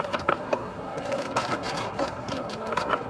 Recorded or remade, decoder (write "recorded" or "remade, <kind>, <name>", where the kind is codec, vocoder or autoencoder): remade, codec, SNAC